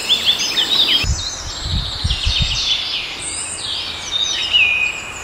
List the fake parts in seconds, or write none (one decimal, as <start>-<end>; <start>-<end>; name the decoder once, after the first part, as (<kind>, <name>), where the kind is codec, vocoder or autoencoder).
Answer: none